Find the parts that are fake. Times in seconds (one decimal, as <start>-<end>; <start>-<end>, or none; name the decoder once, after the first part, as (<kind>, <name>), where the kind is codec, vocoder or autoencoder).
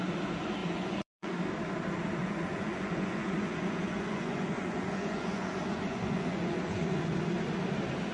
0.6-1.3 (vocoder, Vocos); 2.2-7.1